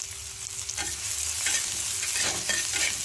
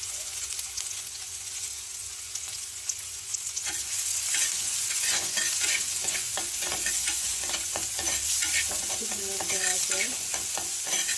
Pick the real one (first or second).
first